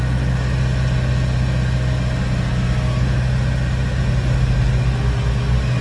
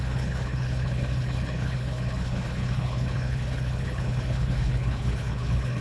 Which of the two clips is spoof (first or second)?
second